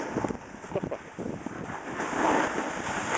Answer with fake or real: real